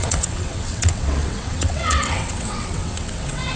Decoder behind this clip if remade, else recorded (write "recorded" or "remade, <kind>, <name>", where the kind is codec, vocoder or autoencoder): remade, vocoder, WaveNeXt